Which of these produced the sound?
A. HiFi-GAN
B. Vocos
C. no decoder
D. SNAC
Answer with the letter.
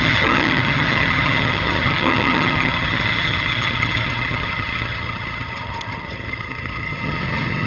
A